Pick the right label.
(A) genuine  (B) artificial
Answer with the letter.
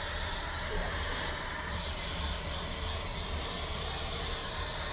B